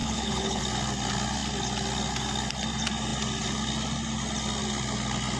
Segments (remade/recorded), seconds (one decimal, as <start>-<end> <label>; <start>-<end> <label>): 0.0-0.6 remade; 0.6-5.4 recorded